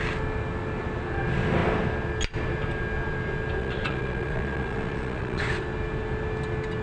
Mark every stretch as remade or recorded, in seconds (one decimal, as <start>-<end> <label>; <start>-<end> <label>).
0.0-3.6 recorded; 3.6-5.5 remade; 5.5-6.8 recorded